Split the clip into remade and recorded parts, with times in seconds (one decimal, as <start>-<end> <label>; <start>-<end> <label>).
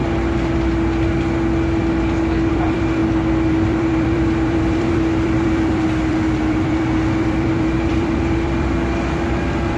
0.0-2.5 recorded; 2.5-3.0 remade; 3.0-3.5 recorded; 3.5-9.8 remade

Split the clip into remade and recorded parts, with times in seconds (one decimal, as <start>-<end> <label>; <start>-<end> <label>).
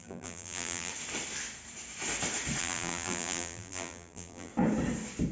0.0-0.9 remade; 0.9-2.6 recorded; 2.6-4.5 remade; 4.5-5.3 recorded